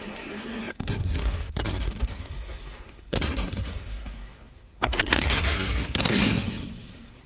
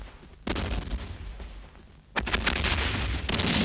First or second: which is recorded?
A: second